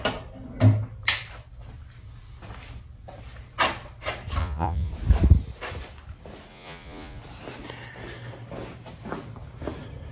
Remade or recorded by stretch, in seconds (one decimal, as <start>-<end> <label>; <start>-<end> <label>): 0.0-4.4 recorded; 4.4-4.9 remade; 4.9-6.5 recorded; 6.5-7.2 remade; 7.2-10.1 recorded